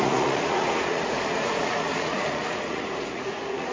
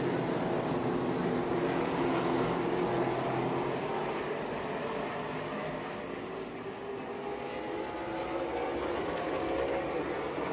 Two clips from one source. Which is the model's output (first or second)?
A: first